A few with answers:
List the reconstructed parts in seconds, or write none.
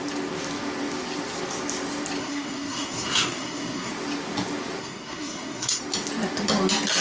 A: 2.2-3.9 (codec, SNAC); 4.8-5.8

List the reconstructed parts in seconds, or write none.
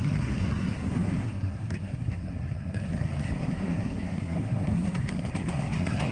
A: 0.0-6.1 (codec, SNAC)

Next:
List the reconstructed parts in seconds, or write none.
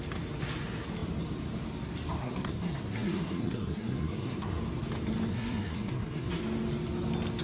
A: 2.2-4.6 (codec, SNAC); 5.3-6.4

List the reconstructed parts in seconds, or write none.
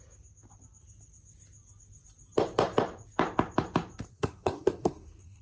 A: 4.1-5.4 (codec, SNAC)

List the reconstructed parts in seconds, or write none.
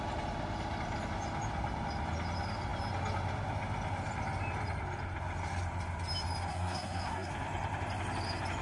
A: 6.5-7.3 (codec, SNAC)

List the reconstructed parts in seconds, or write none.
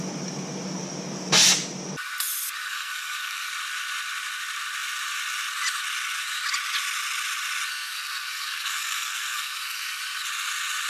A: 2.7-3.5 (codec, SNAC); 7.7-10.0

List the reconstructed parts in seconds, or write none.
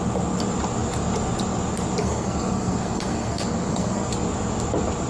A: 2.0-4.1 (codec, SNAC)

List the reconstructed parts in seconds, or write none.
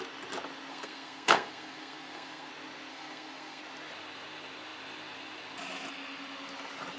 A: 0.7-2.5 (codec, SNAC); 2.9-3.6